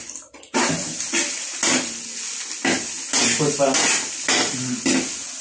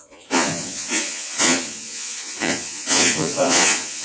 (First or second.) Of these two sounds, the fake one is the second